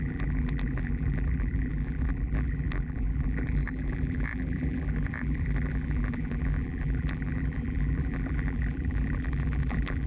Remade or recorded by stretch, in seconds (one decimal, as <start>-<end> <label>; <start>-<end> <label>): 0.0-10.1 remade